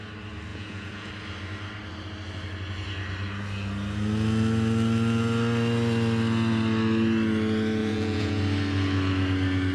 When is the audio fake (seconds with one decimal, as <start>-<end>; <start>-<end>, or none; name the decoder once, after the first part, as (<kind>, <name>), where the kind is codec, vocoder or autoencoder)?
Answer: 0.5-1.1 (vocoder, Vocos); 7.8-8.4